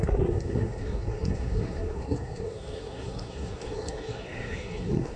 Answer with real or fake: fake